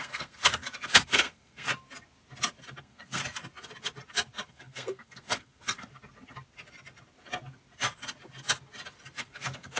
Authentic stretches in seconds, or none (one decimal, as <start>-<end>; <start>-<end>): 1.7-2.8; 3.2-4.5; 5.9-9.2

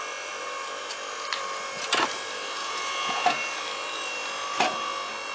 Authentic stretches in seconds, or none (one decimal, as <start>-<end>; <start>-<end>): 0.0-2.6; 3.4-5.3

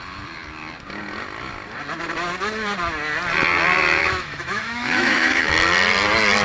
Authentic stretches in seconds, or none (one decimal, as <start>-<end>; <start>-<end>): 0.0-4.0; 5.5-6.4

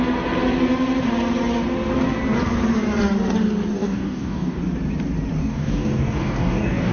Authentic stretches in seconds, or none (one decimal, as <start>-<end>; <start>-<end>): 0.0-3.7; 4.6-5.4